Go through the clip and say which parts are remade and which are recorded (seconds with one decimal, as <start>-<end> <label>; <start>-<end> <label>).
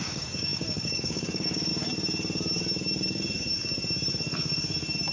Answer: 0.0-1.7 remade; 1.7-5.1 recorded